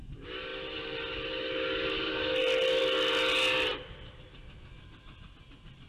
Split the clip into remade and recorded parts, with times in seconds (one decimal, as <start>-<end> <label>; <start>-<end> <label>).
0.0-5.9 recorded